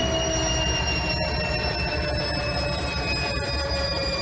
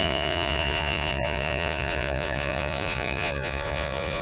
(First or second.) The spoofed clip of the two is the second